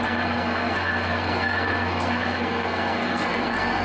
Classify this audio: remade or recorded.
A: remade